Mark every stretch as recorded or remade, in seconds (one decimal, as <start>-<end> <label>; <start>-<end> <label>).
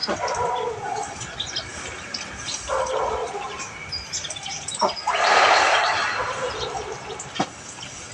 0.0-3.2 recorded; 3.2-7.4 remade; 7.4-8.1 recorded